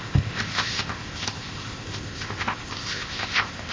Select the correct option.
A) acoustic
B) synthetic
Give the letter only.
B